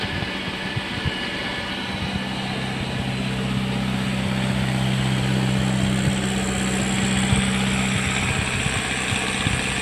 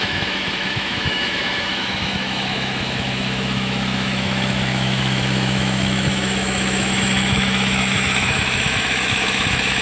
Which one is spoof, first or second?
second